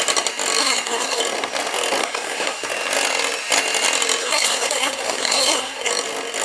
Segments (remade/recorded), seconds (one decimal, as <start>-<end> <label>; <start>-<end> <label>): 0.0-0.6 recorded; 0.6-1.2 remade; 1.2-2.0 recorded; 2.0-2.7 remade; 2.7-4.2 recorded; 4.2-5.9 remade; 5.9-6.4 recorded